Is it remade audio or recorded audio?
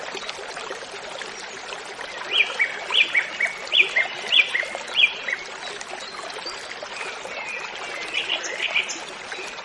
recorded